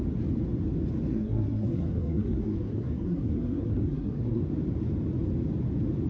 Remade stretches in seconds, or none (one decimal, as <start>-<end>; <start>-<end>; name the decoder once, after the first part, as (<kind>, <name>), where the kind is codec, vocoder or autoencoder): 1.1-4.4 (codec, SNAC)